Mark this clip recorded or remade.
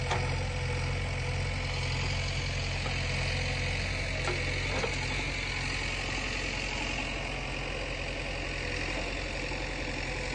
recorded